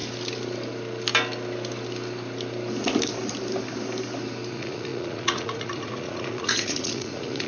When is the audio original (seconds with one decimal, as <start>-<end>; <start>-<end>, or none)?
0.0-4.5